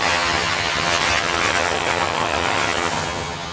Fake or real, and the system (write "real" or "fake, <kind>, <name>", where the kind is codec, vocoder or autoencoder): fake, vocoder, HiFi-GAN